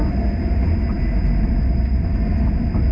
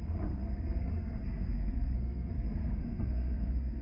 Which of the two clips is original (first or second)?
first